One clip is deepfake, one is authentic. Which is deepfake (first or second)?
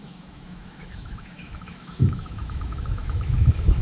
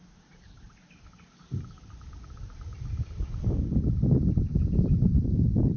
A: first